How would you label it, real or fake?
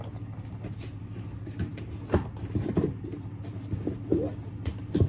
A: real